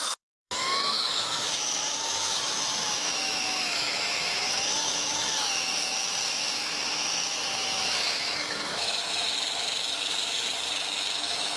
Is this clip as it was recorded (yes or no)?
no